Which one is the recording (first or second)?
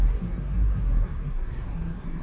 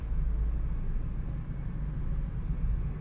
second